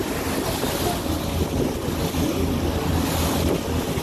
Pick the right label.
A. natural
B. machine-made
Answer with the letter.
A